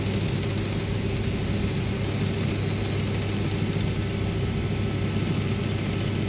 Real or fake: real